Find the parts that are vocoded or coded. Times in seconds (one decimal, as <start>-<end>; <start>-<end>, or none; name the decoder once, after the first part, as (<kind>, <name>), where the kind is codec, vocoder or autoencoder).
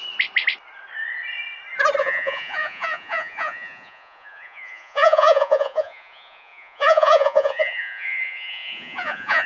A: 2.0-9.5 (vocoder, Vocos)